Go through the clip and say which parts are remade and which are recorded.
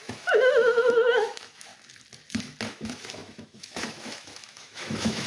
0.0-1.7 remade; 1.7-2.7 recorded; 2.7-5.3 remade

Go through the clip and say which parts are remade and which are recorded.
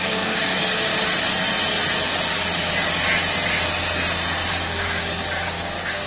0.0-0.9 remade; 0.9-4.5 recorded; 4.5-6.1 remade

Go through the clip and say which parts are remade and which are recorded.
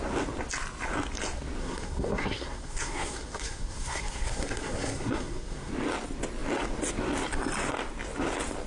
0.0-1.6 recorded; 1.6-5.7 remade; 5.7-8.7 recorded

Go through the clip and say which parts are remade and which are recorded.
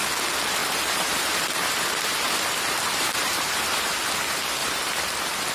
0.0-0.6 recorded; 0.6-3.9 remade; 3.9-4.6 recorded; 4.6-5.5 remade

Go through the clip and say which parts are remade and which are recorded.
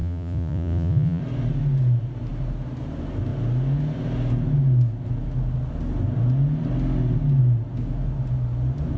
0.0-1.2 remade; 1.2-9.0 recorded